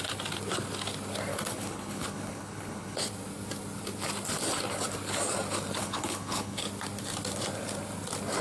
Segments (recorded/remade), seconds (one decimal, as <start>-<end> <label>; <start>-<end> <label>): 0.0-1.3 recorded; 1.3-3.1 remade; 3.1-5.8 recorded; 5.8-6.6 remade; 6.6-8.4 recorded